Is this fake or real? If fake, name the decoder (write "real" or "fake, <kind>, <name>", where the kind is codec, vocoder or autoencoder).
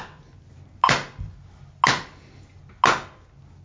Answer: real